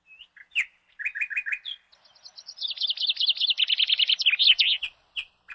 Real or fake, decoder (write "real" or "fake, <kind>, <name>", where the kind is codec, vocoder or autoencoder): real